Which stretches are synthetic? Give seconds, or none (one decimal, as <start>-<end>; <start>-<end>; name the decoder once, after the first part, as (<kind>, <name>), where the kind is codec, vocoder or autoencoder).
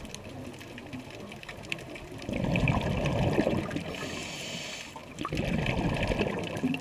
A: none